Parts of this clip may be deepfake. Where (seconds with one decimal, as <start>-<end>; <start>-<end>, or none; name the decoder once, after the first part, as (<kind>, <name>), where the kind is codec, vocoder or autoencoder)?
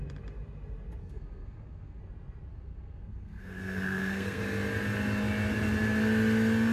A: 1.0-2.0 (codec, SNAC); 2.5-4.4